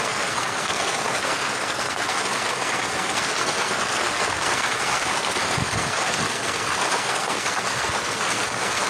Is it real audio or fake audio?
fake